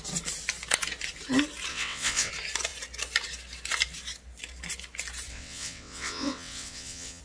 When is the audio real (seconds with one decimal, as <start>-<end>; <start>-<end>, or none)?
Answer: 0.0-1.7; 2.3-5.3